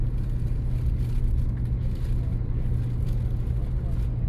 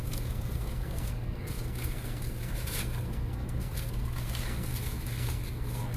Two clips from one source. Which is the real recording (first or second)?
first